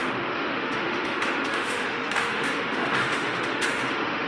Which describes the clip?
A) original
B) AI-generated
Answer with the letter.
B